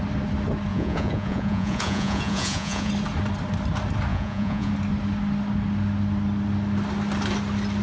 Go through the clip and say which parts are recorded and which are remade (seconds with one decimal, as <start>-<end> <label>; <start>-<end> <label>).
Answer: 0.0-0.7 recorded; 0.7-2.9 remade; 2.9-4.1 recorded; 4.1-4.7 remade; 4.7-7.8 recorded